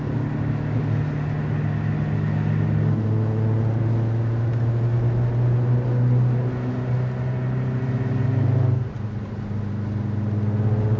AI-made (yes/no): no